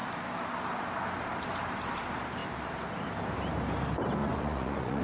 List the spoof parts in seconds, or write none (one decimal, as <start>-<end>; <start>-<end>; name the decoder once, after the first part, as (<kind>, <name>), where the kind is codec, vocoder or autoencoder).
4.2-5.0 (vocoder, Vocos)